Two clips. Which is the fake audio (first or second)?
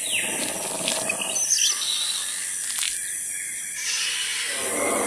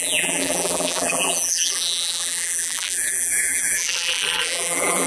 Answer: second